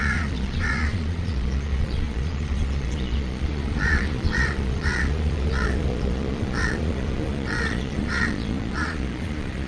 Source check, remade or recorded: remade